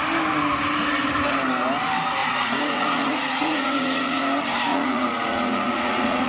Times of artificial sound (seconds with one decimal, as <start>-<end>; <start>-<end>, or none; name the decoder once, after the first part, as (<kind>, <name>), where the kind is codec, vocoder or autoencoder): 2.2-4.2 (vocoder, Vocos); 4.7-6.3